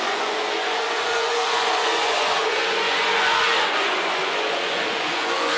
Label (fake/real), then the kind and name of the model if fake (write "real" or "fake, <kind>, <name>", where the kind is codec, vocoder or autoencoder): fake, vocoder, Vocos